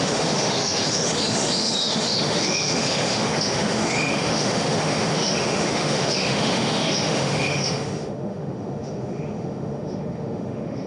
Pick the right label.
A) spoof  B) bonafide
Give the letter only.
A